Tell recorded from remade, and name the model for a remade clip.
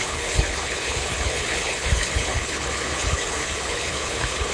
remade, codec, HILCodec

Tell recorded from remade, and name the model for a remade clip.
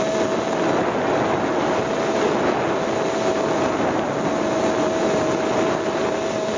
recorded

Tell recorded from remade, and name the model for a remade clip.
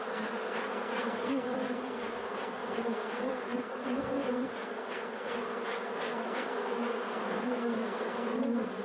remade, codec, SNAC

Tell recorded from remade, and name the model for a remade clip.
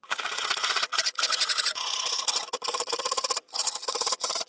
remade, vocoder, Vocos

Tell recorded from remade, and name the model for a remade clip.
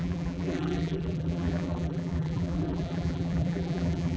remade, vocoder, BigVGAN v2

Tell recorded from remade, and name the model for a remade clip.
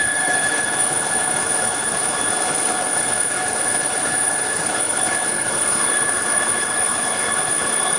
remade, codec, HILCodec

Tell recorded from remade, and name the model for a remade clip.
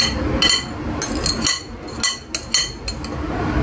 recorded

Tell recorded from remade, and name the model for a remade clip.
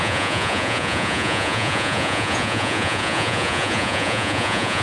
remade, vocoder, Vocos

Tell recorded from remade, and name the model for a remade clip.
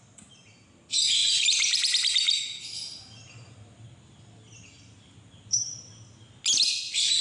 recorded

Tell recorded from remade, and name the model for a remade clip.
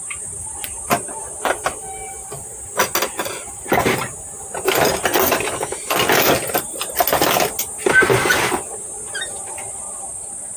recorded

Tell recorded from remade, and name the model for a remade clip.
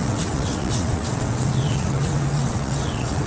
remade, vocoder, WaveNeXt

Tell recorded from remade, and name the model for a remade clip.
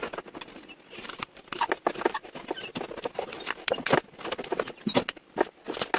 recorded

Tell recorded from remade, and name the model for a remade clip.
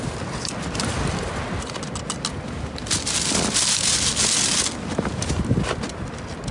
recorded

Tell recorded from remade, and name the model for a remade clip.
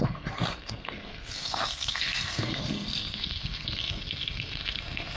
remade, codec, SNAC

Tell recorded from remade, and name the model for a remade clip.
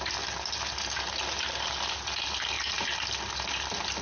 recorded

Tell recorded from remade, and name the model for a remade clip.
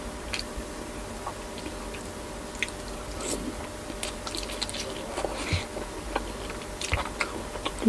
recorded